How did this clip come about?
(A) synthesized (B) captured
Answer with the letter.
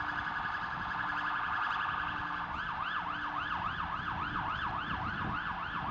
B